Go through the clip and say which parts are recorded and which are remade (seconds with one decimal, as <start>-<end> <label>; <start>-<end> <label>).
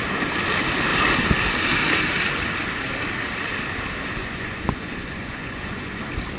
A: 0.0-4.2 recorded; 4.2-6.0 remade; 6.0-6.4 recorded